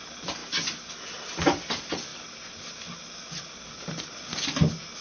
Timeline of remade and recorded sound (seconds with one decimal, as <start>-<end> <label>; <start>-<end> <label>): 0.0-5.0 recorded